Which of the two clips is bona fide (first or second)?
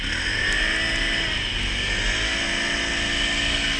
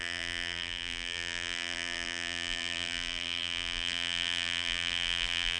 first